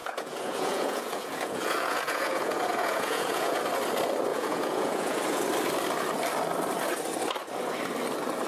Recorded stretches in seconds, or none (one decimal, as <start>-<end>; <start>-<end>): 3.6-4.3; 5.4-8.5